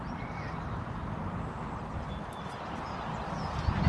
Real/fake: real